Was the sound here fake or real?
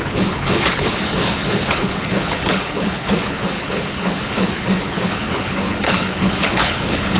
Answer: fake